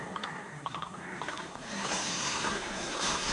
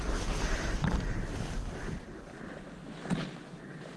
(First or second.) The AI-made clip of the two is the first